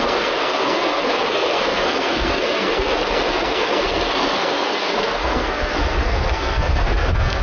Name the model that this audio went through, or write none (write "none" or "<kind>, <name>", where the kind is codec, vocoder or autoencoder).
codec, SNAC